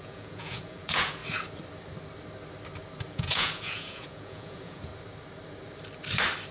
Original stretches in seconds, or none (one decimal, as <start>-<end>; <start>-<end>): 1.2-3.1; 4.9-6.5